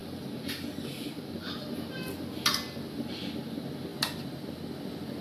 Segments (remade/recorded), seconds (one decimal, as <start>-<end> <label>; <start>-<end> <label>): 0.0-5.2 recorded